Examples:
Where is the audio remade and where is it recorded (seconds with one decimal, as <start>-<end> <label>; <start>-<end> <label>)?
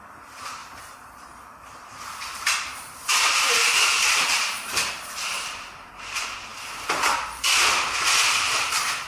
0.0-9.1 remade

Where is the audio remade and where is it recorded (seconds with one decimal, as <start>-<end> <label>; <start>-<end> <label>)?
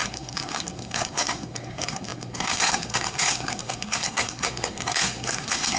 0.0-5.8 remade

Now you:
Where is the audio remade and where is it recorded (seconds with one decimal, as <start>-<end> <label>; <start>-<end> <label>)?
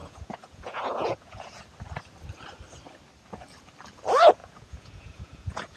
0.0-1.6 remade; 1.6-4.4 recorded; 4.4-5.8 remade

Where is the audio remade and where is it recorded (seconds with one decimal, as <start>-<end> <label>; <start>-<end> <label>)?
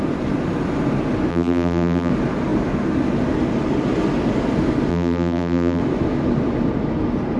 0.0-1.3 recorded; 1.3-2.1 remade; 2.1-4.9 recorded; 4.9-5.8 remade; 5.8-7.4 recorded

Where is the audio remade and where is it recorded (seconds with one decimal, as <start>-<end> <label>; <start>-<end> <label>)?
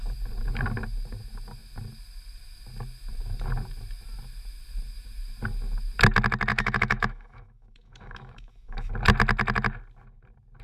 0.0-6.5 recorded; 6.5-8.9 remade; 8.9-10.6 recorded